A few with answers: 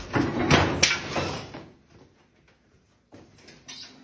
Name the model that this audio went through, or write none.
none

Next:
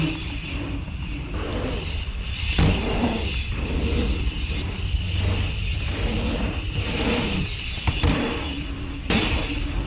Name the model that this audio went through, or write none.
none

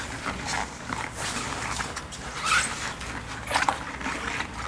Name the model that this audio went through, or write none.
none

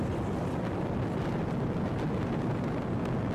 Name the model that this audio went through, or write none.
none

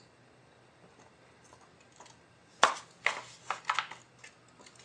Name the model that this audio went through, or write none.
none